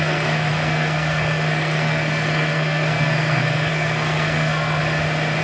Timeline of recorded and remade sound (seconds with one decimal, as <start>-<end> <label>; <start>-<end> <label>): 0.0-4.8 remade; 4.8-5.4 recorded